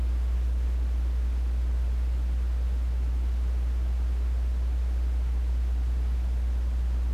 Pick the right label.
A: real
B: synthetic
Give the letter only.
A